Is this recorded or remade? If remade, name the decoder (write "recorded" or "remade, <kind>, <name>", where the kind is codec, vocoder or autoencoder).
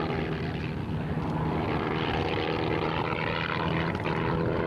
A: recorded